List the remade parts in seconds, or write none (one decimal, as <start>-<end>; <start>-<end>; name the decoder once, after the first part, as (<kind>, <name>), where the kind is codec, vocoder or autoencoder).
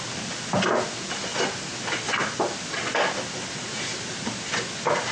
none